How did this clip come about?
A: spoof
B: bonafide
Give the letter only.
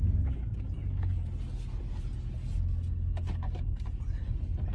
B